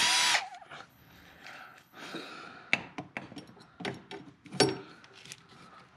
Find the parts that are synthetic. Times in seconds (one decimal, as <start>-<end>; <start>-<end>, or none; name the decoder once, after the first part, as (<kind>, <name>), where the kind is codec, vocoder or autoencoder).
0.9-2.3 (codec, HILCodec)